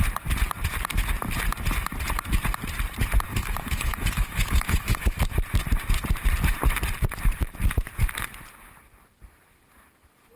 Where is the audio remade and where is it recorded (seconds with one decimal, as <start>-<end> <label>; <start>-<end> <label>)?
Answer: 0.0-3.3 recorded; 3.3-5.2 remade; 5.2-10.4 recorded

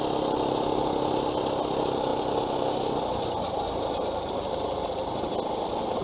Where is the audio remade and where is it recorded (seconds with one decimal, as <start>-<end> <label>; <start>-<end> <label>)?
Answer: 0.0-6.0 recorded

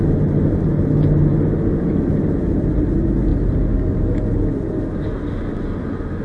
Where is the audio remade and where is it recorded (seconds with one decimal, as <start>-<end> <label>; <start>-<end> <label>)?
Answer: 0.0-6.2 recorded

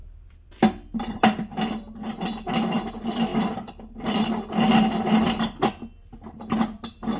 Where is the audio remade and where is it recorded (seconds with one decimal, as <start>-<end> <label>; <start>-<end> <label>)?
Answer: 0.0-1.2 remade; 1.2-3.3 recorded; 3.3-4.3 remade; 4.3-7.2 recorded

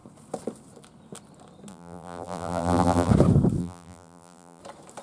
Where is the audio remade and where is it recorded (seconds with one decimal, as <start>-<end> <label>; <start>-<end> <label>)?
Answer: 0.0-1.7 recorded; 1.7-3.1 remade; 3.1-3.6 recorded; 3.6-4.6 remade; 4.6-5.0 recorded

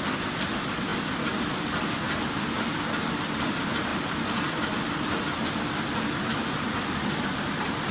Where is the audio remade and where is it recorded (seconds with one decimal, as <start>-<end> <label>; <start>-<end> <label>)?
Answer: 0.0-7.9 recorded

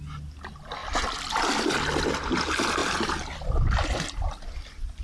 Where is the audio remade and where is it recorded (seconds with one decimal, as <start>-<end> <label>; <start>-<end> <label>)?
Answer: 0.0-5.0 recorded

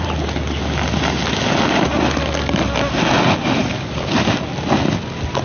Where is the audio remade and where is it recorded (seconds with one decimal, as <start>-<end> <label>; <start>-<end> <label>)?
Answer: 0.0-3.6 recorded; 3.6-4.1 remade; 4.1-5.4 recorded